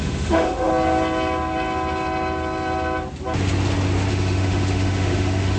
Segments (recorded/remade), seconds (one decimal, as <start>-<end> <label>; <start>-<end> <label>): 0.0-0.7 remade; 0.7-4.1 recorded; 4.1-5.6 remade